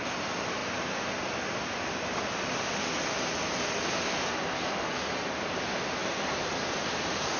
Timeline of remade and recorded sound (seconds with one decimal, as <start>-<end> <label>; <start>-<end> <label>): 0.0-0.6 remade; 0.6-5.0 recorded; 5.0-7.4 remade